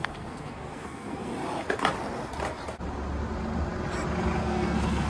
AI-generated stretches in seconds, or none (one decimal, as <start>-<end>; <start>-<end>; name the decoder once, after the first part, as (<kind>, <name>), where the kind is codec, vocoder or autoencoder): 0.0-1.3 (codec, SNAC); 4.4-5.1